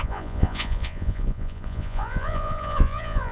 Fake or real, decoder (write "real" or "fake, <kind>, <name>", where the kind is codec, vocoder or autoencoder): fake, vocoder, Vocos